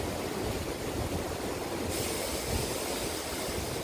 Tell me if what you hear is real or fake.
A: real